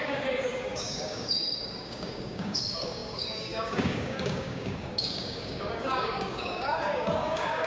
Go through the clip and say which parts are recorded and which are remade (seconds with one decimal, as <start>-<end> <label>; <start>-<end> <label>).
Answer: 0.0-7.7 remade